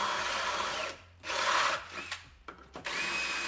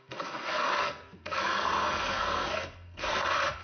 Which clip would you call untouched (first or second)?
first